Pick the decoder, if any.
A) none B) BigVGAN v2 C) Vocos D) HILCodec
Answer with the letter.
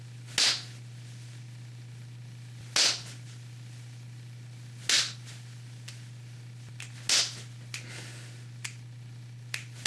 A